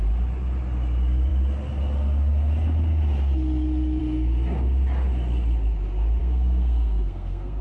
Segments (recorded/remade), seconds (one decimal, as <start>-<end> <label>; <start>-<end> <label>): 0.0-6.2 recorded; 6.2-7.6 remade